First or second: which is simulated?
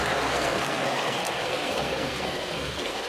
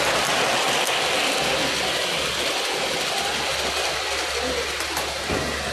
first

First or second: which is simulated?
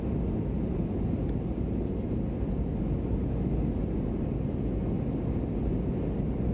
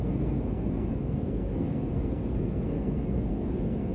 second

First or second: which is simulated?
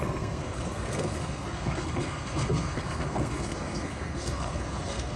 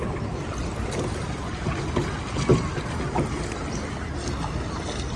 first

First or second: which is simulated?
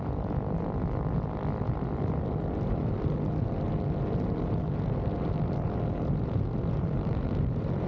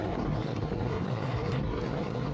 second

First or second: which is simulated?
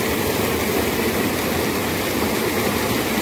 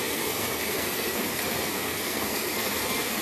second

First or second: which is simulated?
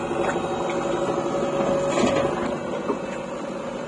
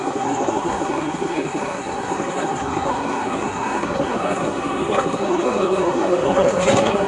second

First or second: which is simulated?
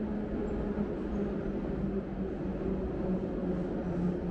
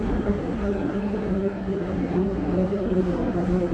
second